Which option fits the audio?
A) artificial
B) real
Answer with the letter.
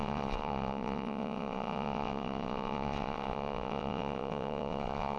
A